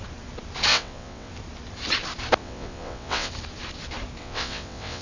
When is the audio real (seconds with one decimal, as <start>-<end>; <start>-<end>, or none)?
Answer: 0.0-0.7; 1.3-2.4; 3.3-4.2